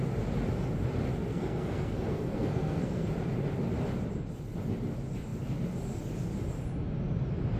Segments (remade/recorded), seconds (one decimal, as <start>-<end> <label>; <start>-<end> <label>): 0.0-1.3 recorded; 1.3-3.1 remade; 3.1-7.6 recorded